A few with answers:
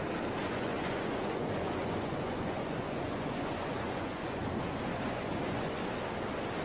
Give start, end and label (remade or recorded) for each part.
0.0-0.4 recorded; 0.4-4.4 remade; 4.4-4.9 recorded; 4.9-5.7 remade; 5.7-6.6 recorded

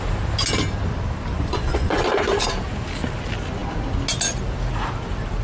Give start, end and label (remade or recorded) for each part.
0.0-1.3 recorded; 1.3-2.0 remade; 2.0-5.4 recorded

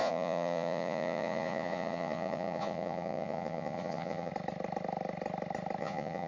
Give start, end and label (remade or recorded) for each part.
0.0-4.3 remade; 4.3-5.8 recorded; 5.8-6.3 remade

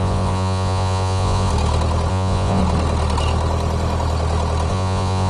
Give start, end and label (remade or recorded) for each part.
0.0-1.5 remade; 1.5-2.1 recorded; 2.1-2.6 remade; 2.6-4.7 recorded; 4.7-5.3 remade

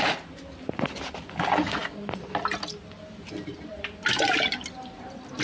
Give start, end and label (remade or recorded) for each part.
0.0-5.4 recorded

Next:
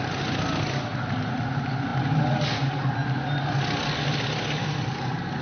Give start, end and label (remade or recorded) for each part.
0.0-5.4 recorded